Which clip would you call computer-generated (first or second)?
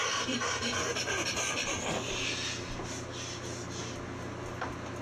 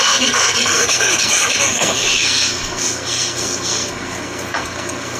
second